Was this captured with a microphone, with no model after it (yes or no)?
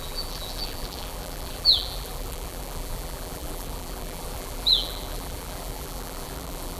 no